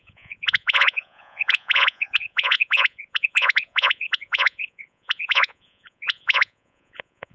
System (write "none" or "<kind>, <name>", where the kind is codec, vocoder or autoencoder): vocoder, Vocos